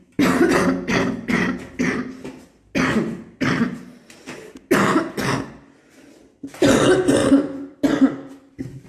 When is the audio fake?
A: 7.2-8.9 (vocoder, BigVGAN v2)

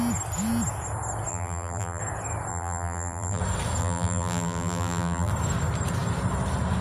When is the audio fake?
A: 1.3-2.0 (vocoder, BigVGAN v2); 2.5-3.4; 3.8-5.3

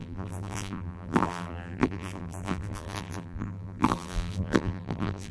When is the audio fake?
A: 0.0-5.3 (vocoder, BigVGAN v2)

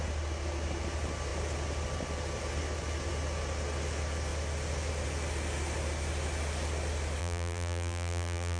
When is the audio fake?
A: 7.2-8.6 (vocoder, BigVGAN v2)

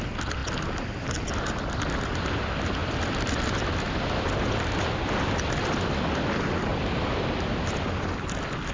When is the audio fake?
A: 2.8-3.6 (vocoder, BigVGAN v2); 6.7-7.4